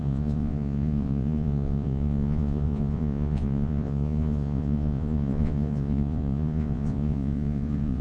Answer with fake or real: fake